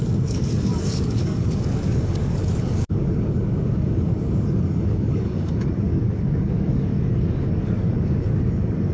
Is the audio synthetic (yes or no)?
yes